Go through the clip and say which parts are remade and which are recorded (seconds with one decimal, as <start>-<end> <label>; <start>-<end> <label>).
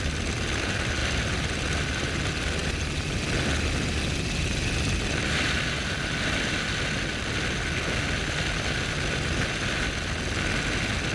0.0-11.1 recorded